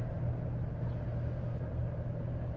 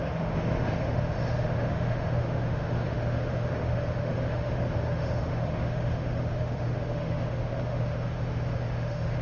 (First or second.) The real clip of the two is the first